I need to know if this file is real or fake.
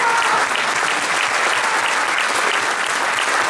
real